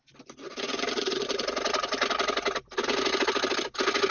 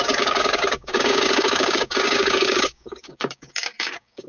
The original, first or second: first